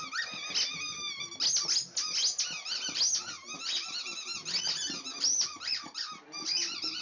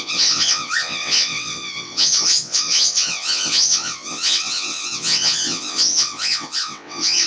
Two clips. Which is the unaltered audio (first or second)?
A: first